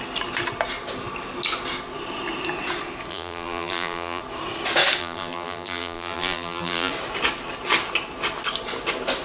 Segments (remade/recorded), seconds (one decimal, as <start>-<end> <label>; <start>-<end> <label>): 0.0-3.1 recorded; 3.1-4.2 remade; 4.2-5.0 recorded; 5.0-6.9 remade; 6.9-9.2 recorded